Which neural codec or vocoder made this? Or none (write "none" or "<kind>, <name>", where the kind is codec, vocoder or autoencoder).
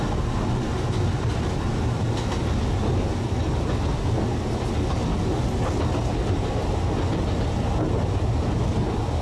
none